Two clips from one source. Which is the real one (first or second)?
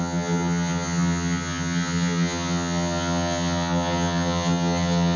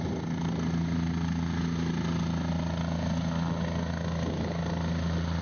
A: second